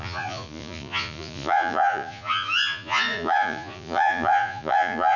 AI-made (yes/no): yes